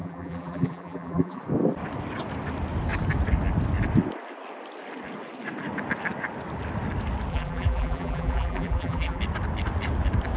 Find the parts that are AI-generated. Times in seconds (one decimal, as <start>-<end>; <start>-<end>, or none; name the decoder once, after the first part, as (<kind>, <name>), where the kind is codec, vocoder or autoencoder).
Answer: 0.0-1.4 (vocoder, BigVGAN v2); 7.3-9.2